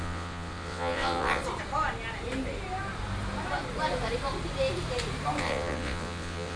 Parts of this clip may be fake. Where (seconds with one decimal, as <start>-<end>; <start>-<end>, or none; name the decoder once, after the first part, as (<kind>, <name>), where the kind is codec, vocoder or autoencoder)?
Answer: 0.0-1.4 (vocoder, WaveNeXt); 5.4-6.6